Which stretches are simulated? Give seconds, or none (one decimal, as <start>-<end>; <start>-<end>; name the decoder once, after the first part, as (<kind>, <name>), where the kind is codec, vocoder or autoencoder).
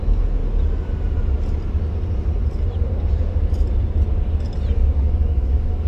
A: 4.8-5.9 (codec, DAC)